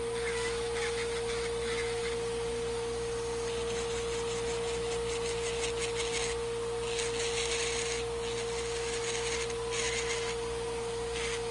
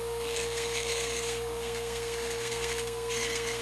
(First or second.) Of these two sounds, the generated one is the second